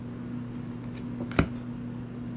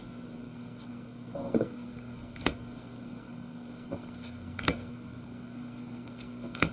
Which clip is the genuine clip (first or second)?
first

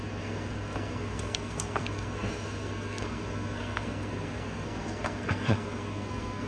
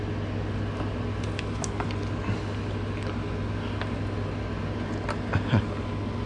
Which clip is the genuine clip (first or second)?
second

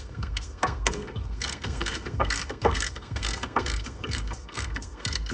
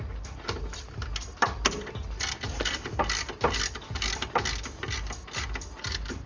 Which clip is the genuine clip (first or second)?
second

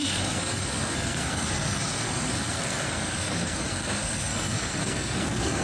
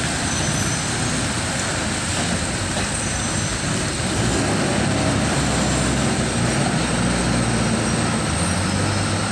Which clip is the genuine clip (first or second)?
second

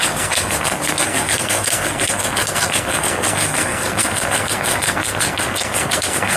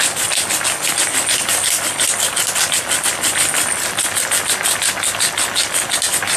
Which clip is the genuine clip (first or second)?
second